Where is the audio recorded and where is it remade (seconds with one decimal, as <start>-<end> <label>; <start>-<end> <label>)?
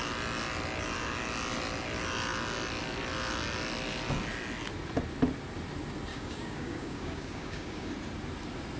0.0-6.1 recorded; 6.1-7.9 remade; 7.9-8.8 recorded